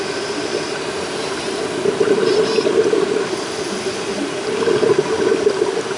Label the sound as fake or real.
real